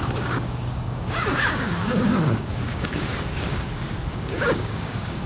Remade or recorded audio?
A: remade